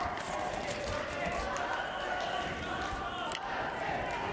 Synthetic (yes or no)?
no